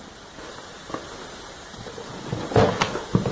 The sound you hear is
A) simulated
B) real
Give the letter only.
B